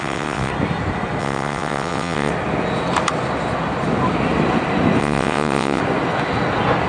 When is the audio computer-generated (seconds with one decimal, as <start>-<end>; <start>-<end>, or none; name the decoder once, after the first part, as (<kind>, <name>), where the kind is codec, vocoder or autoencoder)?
0.0-0.5 (vocoder, WaveNeXt); 1.2-2.3; 5.0-5.8